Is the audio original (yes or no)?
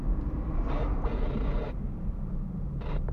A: yes